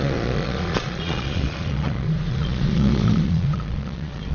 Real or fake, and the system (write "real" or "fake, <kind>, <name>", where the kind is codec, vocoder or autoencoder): fake, vocoder, Vocos